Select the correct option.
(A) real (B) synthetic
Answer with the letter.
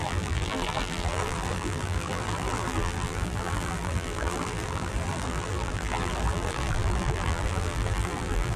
B